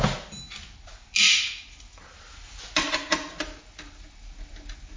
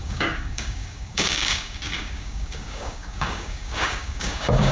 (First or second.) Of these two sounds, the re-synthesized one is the second